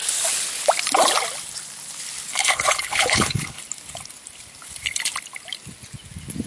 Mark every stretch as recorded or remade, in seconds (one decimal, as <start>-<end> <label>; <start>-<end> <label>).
0.0-2.4 recorded; 2.4-3.6 remade; 3.6-6.5 recorded